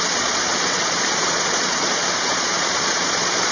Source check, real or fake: fake